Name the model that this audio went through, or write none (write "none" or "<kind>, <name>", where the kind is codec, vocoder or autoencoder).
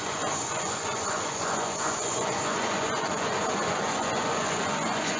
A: vocoder, Vocos